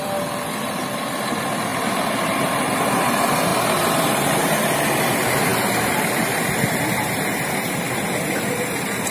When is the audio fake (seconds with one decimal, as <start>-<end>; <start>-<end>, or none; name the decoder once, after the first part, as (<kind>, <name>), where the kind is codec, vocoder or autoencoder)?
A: 0.0-3.5 (vocoder, BigVGAN v2); 4.3-9.1